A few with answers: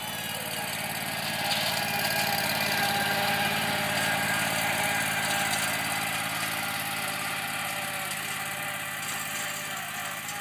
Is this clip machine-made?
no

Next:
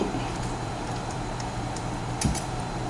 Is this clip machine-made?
yes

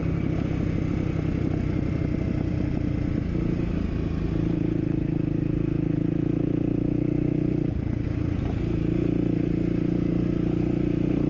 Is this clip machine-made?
no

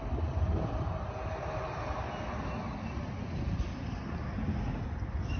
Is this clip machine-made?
no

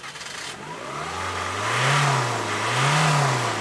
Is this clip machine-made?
no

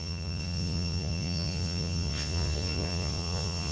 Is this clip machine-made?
yes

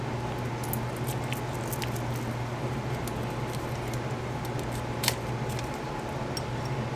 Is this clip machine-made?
no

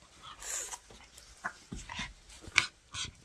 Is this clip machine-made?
no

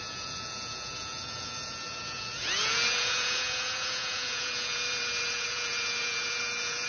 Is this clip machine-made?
yes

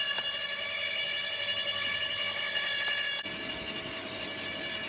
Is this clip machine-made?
no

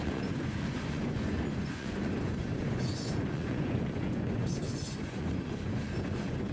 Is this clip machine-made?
yes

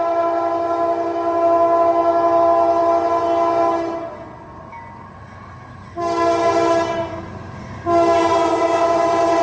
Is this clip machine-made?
no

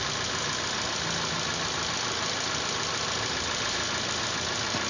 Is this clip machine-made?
no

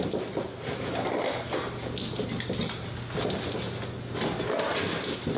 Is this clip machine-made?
no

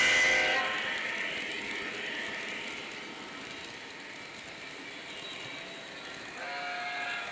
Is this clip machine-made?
no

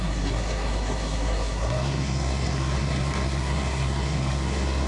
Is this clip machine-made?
yes